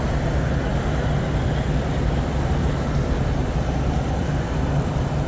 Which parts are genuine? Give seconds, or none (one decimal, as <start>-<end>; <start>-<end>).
0.0-5.3